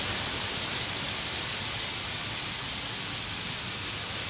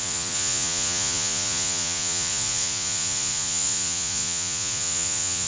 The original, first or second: first